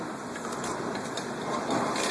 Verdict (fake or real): real